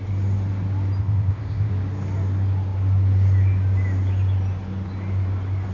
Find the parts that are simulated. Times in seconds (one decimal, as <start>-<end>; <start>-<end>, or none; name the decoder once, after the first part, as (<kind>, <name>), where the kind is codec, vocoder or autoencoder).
1.0-1.7 (codec, ZipCodec)